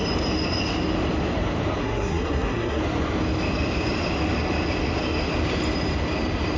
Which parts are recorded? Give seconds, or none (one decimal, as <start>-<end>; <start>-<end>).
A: 0.0-1.8; 2.8-6.6